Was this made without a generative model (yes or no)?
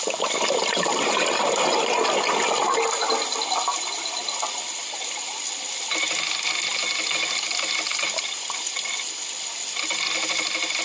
yes